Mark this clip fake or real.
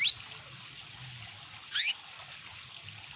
real